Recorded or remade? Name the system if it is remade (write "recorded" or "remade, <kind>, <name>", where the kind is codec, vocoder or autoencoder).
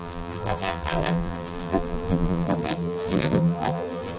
remade, vocoder, BigVGAN v2